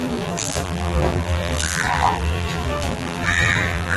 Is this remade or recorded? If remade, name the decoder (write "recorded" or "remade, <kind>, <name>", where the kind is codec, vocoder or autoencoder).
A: remade, vocoder, BigVGAN v2